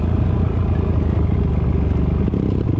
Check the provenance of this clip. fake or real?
real